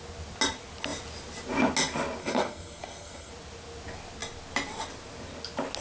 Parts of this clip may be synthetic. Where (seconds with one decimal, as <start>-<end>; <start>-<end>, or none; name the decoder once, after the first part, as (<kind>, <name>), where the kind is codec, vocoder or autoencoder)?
2.2-3.3 (codec, SNAC)